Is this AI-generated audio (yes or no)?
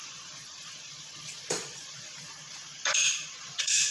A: yes